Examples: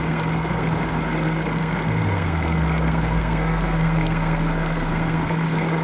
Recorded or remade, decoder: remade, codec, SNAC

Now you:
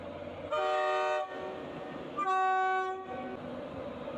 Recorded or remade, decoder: recorded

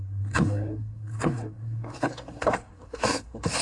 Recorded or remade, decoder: remade, codec, SNAC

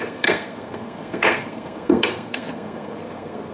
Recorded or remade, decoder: remade, codec, SNAC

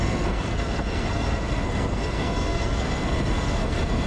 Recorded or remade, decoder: remade, codec, SNAC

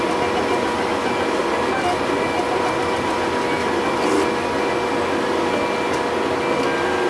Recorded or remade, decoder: recorded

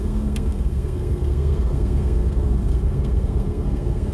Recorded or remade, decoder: remade, codec, SNAC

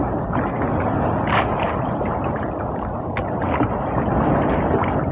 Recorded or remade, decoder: recorded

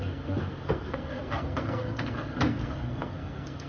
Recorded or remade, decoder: remade, codec, SNAC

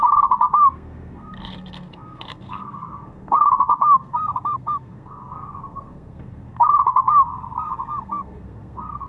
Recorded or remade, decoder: remade, codec, SNAC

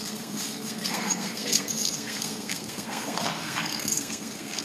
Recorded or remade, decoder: remade, codec, SNAC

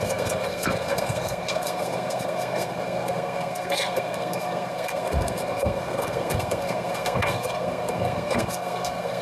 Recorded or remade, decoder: remade, codec, SNAC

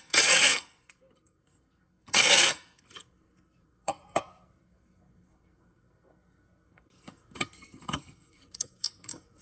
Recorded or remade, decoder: remade, codec, SNAC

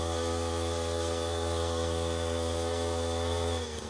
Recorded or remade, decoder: remade, codec, SNAC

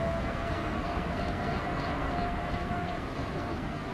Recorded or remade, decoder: remade, codec, SNAC